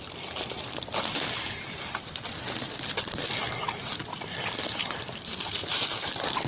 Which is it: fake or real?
real